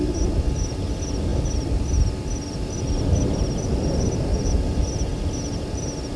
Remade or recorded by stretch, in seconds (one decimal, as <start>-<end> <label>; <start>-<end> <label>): 0.0-1.3 recorded; 1.3-4.5 remade; 4.5-6.2 recorded